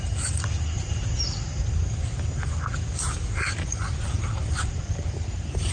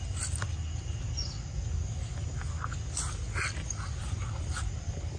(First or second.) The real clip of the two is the second